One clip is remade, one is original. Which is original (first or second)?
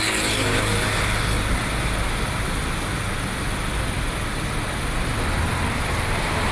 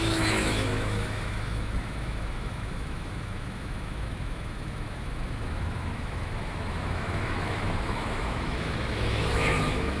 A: first